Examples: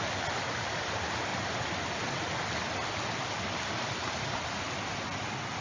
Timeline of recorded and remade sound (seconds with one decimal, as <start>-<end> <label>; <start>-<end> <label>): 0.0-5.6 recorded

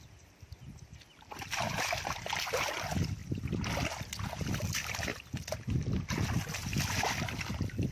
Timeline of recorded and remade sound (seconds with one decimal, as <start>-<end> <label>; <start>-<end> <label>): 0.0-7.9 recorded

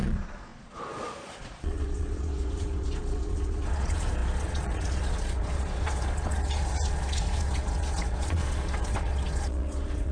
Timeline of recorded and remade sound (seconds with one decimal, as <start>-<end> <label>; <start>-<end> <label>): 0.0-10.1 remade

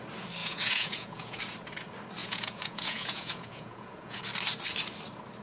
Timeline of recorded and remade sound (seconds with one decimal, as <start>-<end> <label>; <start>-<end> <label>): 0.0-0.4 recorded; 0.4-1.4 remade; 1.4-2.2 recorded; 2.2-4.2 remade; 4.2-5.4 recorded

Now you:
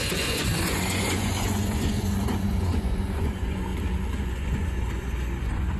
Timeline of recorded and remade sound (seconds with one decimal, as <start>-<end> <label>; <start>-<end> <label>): 0.0-3.7 remade; 3.7-4.2 recorded; 4.2-5.8 remade

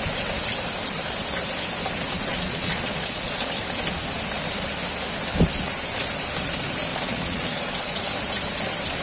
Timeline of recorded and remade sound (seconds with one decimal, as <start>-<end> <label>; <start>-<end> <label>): 0.0-2.3 recorded; 2.3-3.6 remade; 3.6-6.9 recorded; 6.9-8.0 remade; 8.0-9.0 recorded

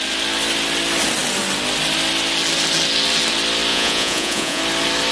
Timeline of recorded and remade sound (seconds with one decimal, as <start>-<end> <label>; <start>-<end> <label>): 0.0-3.7 recorded; 3.7-4.6 remade; 4.6-5.1 recorded